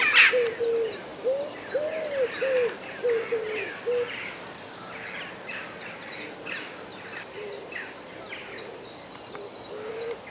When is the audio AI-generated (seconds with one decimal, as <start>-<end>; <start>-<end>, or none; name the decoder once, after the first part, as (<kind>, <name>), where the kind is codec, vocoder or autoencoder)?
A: none